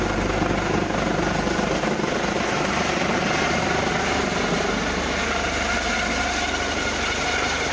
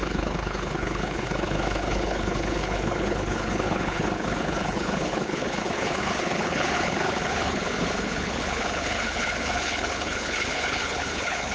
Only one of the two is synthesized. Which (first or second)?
second